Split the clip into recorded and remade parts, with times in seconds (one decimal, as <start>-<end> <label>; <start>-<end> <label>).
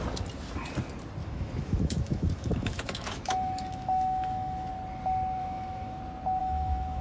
0.0-1.2 recorded; 1.2-4.7 remade; 4.7-5.4 recorded; 5.4-6.0 remade; 6.0-6.4 recorded; 6.4-7.0 remade